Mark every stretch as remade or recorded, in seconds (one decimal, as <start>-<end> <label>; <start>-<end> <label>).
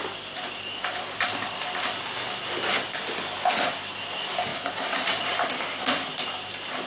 0.0-4.5 recorded; 4.5-5.3 remade; 5.3-6.9 recorded